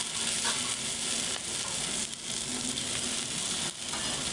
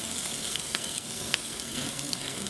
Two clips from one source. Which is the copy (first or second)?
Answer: second